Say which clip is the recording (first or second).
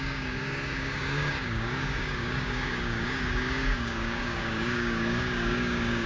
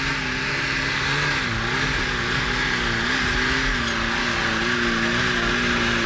second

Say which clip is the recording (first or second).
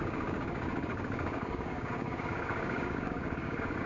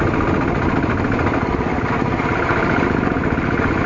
second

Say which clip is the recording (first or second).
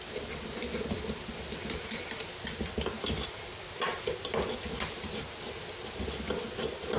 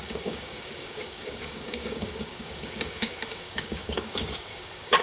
first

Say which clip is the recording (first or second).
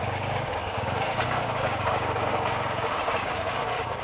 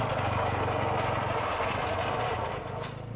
second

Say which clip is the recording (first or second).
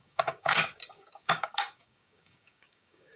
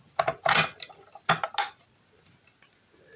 second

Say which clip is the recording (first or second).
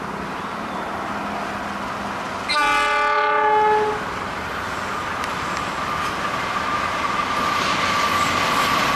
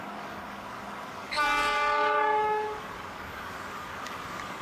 first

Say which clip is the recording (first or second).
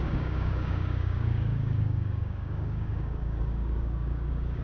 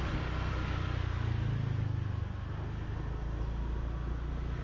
second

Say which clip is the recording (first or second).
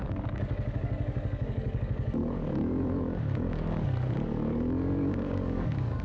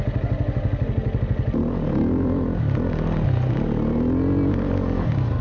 second